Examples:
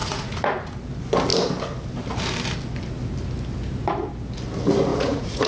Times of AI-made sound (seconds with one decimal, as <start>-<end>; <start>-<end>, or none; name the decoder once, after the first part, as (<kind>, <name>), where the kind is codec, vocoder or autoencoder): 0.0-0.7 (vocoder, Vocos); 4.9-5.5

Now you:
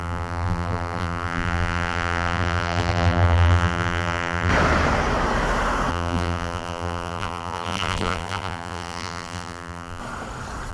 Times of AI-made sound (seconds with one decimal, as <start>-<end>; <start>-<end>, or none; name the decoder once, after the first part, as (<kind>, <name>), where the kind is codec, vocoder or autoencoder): 0.0-4.5 (vocoder, BigVGAN v2); 5.9-10.0

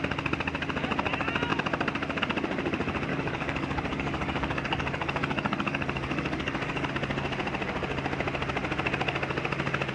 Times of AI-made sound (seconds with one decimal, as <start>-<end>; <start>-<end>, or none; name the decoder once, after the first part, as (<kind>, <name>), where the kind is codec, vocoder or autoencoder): 3.1-6.9 (codec, DAC)

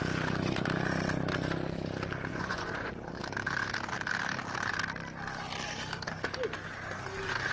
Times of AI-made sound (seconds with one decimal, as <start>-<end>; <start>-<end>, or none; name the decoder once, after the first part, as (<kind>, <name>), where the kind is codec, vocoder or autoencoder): 2.3-3.2 (vocoder, Vocos)

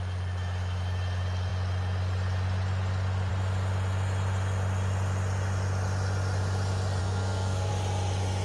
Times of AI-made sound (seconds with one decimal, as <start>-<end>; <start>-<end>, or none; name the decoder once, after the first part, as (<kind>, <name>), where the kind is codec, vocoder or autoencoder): 7.0-7.7 (codec, SNAC)

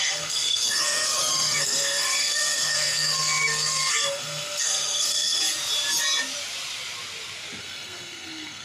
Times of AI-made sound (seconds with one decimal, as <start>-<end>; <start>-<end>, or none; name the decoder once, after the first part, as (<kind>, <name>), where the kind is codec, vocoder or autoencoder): 0.0-5.4 (codec, SNAC); 7.6-8.6